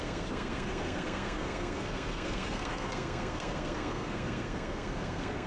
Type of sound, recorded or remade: remade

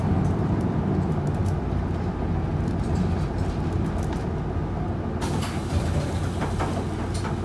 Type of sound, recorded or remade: recorded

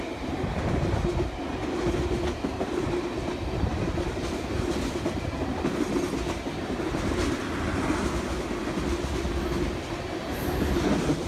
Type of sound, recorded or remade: recorded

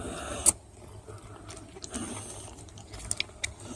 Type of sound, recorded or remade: recorded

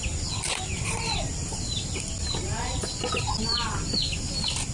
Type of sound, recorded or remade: recorded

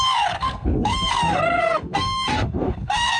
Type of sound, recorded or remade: remade